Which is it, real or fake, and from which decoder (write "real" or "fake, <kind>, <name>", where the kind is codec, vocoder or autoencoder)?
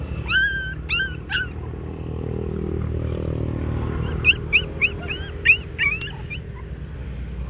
real